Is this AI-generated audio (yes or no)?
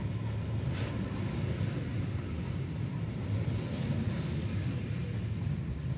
no